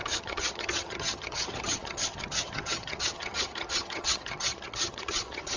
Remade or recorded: remade